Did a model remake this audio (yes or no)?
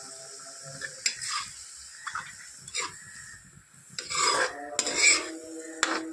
no